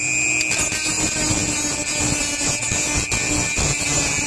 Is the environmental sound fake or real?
real